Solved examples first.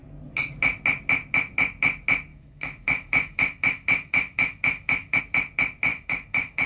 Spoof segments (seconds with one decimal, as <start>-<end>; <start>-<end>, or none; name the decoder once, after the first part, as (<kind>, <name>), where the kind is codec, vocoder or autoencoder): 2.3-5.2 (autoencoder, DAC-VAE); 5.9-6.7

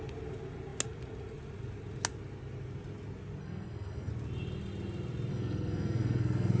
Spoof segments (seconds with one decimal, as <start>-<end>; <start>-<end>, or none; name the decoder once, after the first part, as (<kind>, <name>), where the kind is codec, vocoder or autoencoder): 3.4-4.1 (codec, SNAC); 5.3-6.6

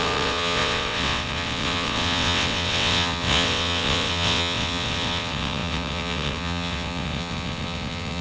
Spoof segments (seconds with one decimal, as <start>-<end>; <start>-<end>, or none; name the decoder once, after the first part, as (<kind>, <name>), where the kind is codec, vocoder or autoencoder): 0.0-8.2 (vocoder, WaveNeXt)

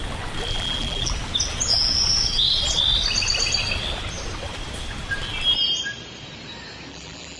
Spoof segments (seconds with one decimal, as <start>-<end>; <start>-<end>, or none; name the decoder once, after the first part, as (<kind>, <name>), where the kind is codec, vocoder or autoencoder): 0.5-1.1 (vocoder, BigVGAN v2); 6.9-7.4

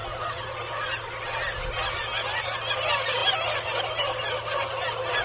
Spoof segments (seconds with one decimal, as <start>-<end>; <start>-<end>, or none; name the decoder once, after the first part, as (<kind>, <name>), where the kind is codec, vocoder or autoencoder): none